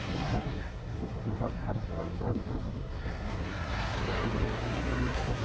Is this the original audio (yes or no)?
no